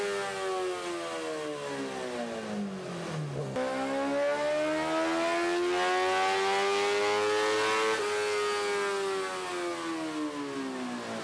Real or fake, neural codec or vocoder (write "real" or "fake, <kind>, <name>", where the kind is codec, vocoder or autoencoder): real